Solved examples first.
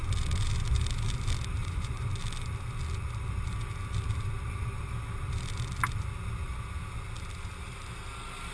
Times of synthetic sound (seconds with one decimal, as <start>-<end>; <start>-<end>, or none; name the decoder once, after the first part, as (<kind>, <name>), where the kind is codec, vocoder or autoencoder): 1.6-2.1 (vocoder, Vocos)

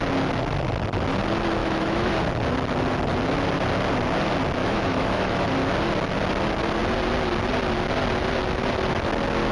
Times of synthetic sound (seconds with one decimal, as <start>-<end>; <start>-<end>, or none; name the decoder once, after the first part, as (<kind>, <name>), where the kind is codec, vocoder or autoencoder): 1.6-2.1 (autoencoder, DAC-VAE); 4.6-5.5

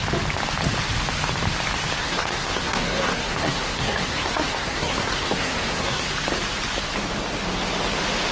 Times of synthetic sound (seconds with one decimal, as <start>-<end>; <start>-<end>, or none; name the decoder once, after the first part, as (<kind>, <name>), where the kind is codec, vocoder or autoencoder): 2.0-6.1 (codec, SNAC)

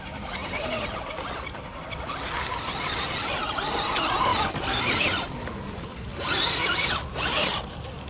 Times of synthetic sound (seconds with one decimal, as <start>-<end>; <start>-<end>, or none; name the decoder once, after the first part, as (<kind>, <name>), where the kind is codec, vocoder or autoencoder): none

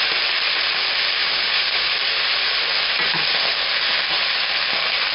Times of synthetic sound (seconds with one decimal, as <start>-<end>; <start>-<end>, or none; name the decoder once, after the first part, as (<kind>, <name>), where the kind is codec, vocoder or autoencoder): 1.2-1.9 (codec, DAC)